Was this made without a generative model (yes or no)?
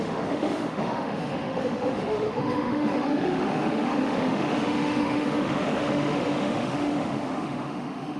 no